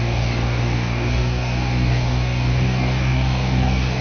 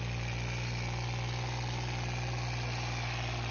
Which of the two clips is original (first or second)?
second